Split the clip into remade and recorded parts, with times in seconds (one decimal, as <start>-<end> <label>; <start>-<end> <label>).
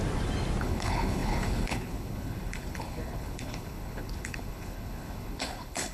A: 0.0-0.6 recorded; 0.6-5.9 remade